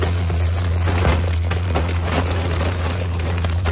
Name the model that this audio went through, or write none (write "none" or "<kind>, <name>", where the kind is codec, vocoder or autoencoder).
vocoder, Vocos